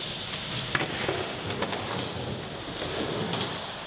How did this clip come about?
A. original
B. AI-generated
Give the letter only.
A